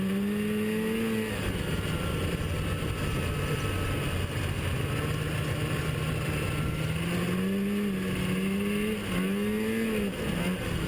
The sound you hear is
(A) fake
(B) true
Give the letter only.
B